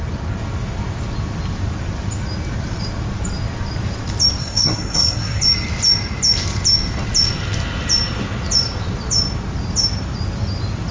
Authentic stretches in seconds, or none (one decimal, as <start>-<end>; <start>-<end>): 0.0-4.4; 5.4-10.9